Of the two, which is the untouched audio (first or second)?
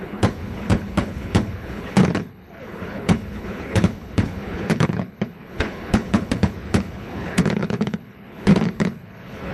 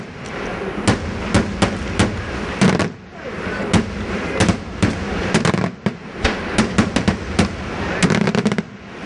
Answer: second